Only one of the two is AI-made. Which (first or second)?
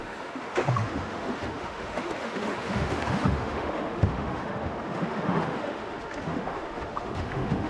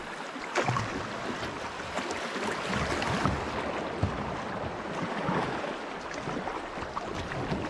first